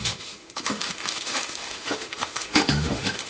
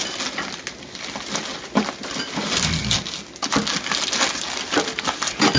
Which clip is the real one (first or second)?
second